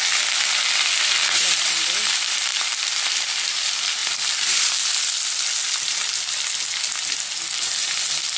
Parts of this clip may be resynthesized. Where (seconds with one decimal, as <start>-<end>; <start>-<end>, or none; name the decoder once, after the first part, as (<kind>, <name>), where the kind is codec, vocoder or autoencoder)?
1.2-2.1 (vocoder, BigVGAN v2); 2.5-3.3